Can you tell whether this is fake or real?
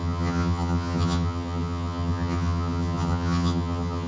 fake